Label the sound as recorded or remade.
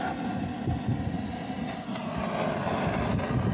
recorded